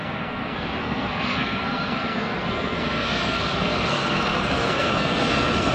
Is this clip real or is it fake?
fake